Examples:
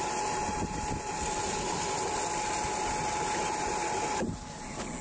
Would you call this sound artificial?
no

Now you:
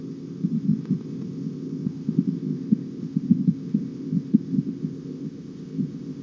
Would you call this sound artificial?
yes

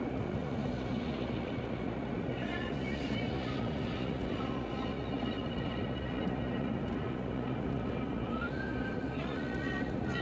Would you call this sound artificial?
yes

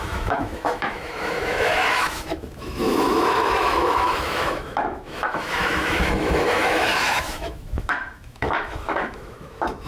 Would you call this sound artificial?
yes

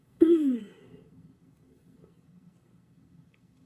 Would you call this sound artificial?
yes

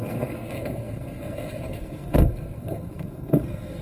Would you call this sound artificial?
yes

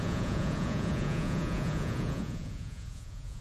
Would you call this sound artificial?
yes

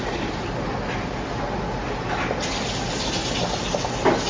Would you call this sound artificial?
no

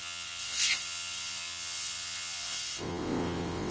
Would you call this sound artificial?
yes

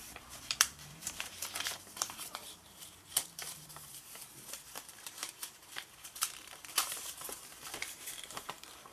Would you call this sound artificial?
yes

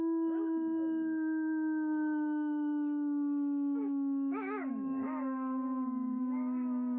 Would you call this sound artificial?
yes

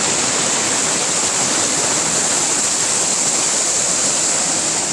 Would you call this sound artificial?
no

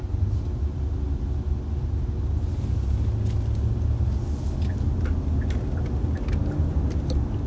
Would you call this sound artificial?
no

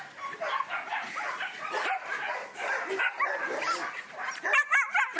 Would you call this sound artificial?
no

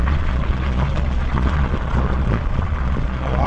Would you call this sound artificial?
yes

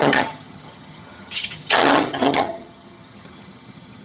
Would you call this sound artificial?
yes